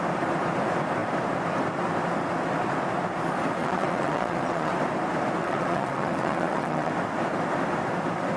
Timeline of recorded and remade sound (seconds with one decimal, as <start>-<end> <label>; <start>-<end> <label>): 0.0-3.6 recorded; 3.6-4.7 remade; 4.7-5.4 recorded; 5.4-6.9 remade; 6.9-8.4 recorded